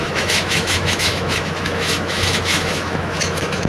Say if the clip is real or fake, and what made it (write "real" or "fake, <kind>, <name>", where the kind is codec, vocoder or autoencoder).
fake, autoencoder, DAC-VAE